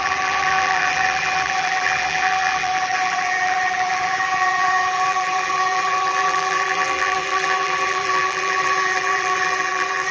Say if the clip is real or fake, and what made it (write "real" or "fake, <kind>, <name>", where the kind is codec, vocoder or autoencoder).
fake, vocoder, BigVGAN v2